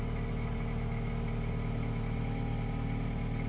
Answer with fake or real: real